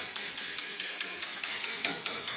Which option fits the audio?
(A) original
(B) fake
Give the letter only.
B